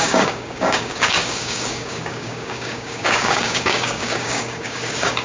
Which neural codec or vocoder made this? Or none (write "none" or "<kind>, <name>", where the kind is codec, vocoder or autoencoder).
codec, DAC